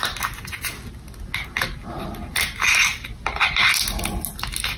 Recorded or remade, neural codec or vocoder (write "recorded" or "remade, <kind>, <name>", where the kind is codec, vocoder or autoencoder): recorded